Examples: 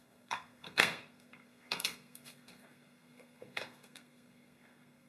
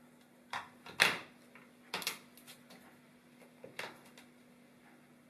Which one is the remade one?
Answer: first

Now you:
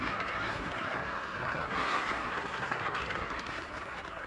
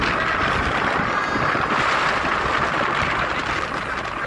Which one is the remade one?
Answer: first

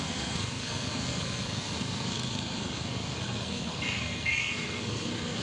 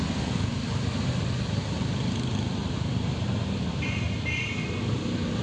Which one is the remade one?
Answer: first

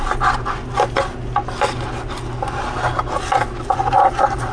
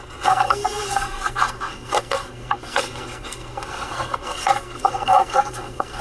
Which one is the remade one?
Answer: second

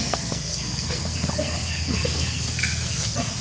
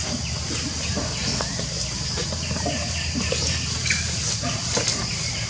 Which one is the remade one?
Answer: first